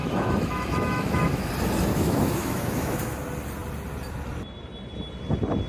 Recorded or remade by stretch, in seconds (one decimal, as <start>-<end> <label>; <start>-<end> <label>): 0.0-1.5 remade; 1.5-1.9 recorded; 1.9-3.2 remade; 3.2-5.7 recorded

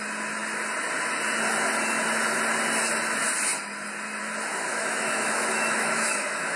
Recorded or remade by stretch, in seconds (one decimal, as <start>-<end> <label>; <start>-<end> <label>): 0.0-4.7 recorded; 4.7-6.6 remade